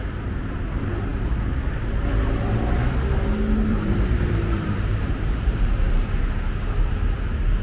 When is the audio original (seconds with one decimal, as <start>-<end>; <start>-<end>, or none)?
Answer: 0.0-3.7; 6.2-7.6